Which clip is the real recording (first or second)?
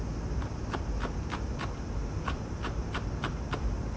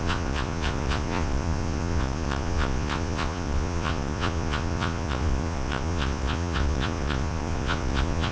first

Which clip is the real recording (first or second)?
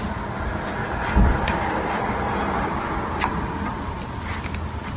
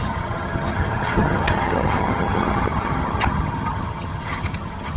first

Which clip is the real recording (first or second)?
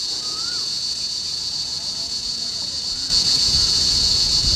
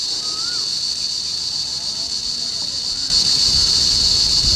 second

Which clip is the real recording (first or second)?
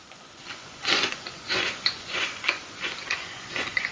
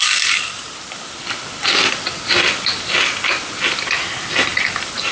second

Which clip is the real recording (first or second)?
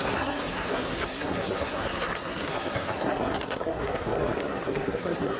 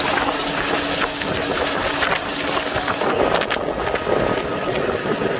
second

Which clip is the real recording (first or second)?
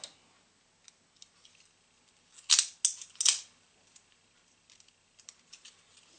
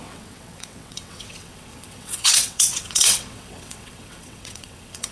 first